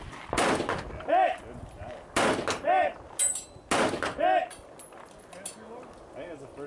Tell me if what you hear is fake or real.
real